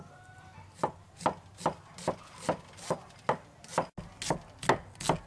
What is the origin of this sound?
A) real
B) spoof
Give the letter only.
A